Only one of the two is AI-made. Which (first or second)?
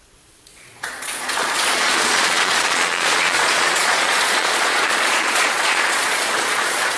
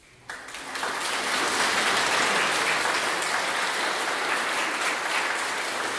first